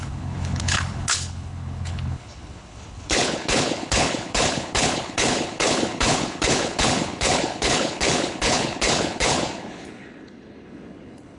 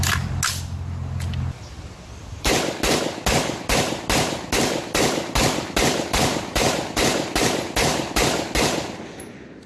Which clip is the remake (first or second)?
first